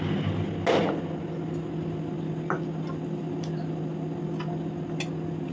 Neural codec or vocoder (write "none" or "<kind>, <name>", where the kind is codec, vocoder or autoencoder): none